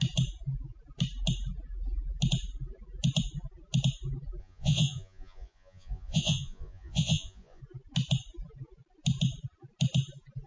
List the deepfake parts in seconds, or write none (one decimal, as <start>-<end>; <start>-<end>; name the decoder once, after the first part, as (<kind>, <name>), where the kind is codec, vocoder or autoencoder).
4.4-7.6 (vocoder, Vocos)